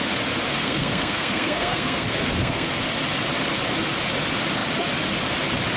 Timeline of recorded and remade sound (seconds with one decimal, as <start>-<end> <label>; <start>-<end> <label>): 0.0-0.5 recorded; 0.5-2.7 remade; 2.7-5.8 recorded